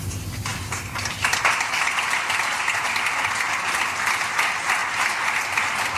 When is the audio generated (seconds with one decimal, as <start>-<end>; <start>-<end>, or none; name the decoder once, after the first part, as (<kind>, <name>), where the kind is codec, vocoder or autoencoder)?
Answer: 0.5-3.6 (vocoder, BigVGAN v2); 4.8-6.0